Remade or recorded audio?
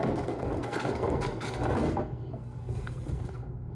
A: remade